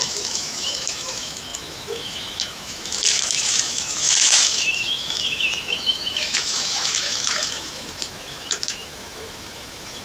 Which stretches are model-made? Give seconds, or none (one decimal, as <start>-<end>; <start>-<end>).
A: 0.0-10.0